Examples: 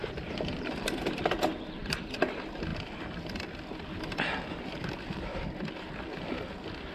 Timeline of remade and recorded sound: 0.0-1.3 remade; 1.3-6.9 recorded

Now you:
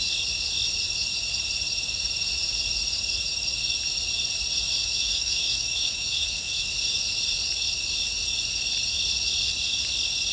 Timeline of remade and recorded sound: 0.0-4.8 recorded; 4.8-6.7 remade; 6.7-10.3 recorded

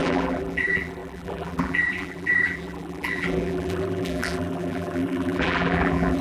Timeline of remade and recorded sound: 0.0-6.2 remade

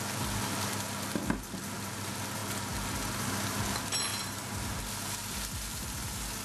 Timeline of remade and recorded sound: 0.0-4.1 recorded; 4.1-4.8 remade; 4.8-6.4 recorded

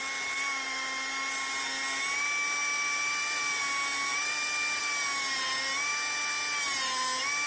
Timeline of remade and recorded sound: 0.0-2.6 recorded; 2.6-3.6 remade; 3.6-4.1 recorded; 4.1-4.8 remade; 4.8-7.5 recorded